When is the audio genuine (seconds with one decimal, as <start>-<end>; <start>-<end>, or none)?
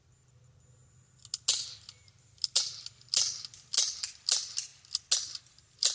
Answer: 0.0-5.9